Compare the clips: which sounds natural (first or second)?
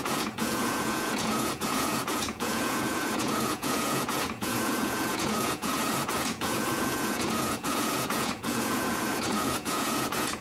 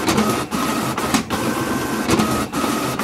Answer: second